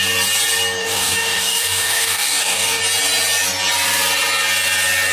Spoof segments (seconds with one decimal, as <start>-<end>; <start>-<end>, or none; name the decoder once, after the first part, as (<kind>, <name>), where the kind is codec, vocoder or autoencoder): 0.8-2.8 (codec, DAC)